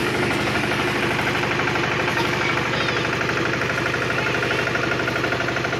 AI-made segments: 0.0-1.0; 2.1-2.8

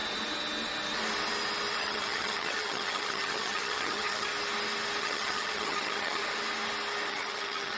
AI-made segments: 1.8-4.3; 5.0-6.2; 7.1-7.8

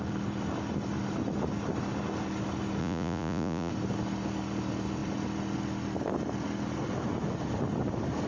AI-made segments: 2.8-3.7

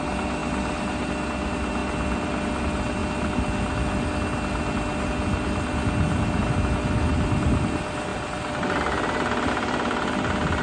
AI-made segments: none

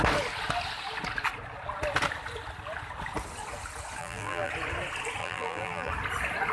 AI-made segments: 4.0-4.5; 5.2-5.9